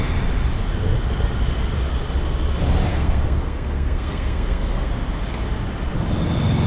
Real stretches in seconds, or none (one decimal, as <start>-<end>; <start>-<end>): 0.0-2.9; 4.9-6.7